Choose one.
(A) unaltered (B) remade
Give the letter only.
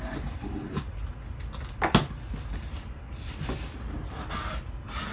A